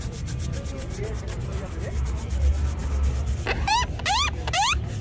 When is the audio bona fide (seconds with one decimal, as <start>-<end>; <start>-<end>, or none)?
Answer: 0.0-5.0